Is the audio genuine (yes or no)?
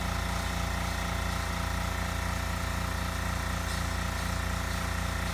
yes